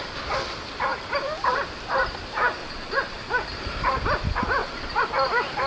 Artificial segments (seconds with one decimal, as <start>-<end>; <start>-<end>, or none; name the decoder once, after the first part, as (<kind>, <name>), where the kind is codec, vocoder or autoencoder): 2.6-3.3 (vocoder, Vocos); 4.6-5.1